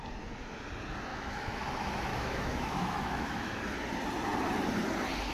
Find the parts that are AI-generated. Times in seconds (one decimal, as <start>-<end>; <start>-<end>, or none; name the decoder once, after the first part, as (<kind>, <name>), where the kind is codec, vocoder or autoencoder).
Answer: 1.1-1.6 (autoencoder, DAC-VAE); 2.1-3.6

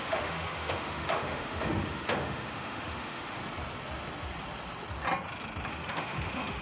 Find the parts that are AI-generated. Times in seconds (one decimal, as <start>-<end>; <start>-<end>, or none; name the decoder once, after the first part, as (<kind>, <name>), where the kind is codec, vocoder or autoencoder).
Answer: 0.0-3.4 (autoencoder, DAC-VAE); 5.7-6.6

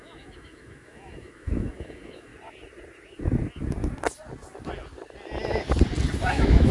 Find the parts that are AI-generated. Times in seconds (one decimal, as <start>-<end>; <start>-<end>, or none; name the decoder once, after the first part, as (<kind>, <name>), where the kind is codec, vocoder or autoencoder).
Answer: 0.0-2.3 (autoencoder, DAC-VAE); 6.3-6.7

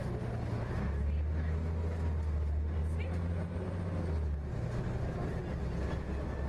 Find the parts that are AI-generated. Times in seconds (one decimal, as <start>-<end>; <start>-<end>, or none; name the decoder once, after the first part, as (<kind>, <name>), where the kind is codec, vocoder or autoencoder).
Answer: none

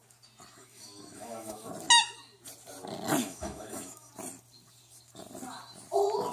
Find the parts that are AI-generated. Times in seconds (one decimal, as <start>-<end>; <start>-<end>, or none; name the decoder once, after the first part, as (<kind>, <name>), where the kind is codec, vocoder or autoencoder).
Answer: 0.6-1.7 (autoencoder, DAC-VAE); 3.2-4.1

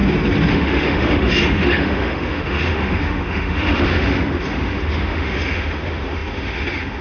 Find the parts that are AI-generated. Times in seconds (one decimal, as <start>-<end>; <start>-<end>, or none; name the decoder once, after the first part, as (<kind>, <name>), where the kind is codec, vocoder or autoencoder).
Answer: 0.5-7.0 (autoencoder, DAC-VAE)

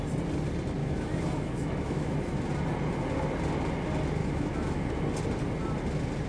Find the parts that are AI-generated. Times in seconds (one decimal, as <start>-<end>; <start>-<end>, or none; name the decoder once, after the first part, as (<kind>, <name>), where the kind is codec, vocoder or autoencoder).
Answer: 0.8-2.5 (autoencoder, DAC-VAE); 4.2-4.9